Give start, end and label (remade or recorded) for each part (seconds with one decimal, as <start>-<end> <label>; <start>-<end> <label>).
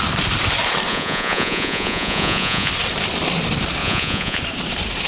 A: 0.0-0.9 recorded; 0.9-2.7 remade; 2.7-3.8 recorded; 3.8-4.4 remade; 4.4-5.1 recorded